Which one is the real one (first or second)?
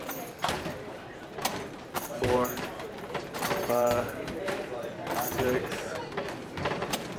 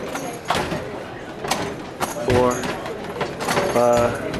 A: second